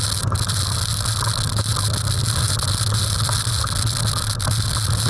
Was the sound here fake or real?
real